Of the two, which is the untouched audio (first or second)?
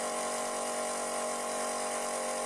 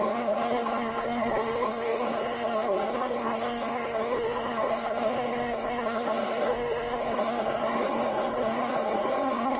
first